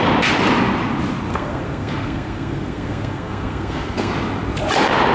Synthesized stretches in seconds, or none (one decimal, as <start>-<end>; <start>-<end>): 1.3-4.1